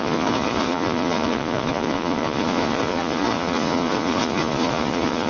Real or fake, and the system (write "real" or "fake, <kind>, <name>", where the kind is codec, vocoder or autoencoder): fake, vocoder, Vocos